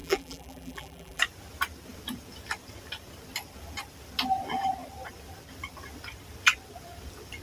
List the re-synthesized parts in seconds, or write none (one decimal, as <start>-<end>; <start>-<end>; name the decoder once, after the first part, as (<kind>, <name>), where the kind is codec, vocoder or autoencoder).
0.0-1.2 (vocoder, BigVGAN v2)